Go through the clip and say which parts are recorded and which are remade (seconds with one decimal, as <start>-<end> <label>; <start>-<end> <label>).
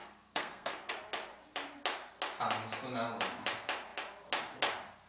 0.0-0.9 remade; 0.9-5.1 recorded